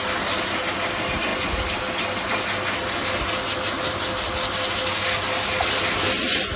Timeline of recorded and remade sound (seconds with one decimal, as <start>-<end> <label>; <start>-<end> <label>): 0.0-6.6 recorded